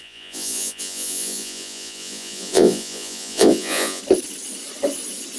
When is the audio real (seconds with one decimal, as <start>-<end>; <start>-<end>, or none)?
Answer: 4.0-5.4